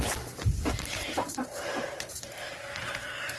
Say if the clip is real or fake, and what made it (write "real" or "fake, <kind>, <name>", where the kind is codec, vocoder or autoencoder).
fake, vocoder, BigVGAN v2